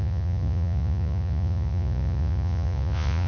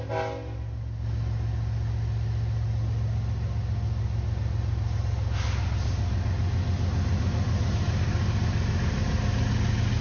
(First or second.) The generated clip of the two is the first